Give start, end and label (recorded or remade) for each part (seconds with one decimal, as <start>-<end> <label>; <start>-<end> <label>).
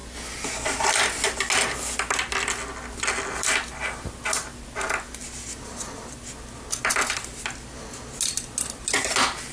0.0-9.5 recorded